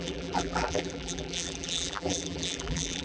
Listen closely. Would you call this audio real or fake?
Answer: fake